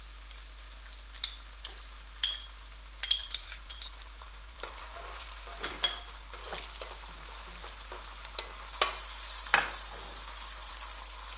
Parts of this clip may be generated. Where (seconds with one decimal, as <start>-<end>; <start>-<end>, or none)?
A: 3.2-5.7